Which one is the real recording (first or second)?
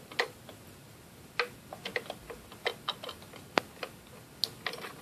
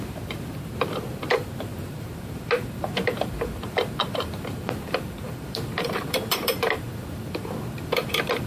first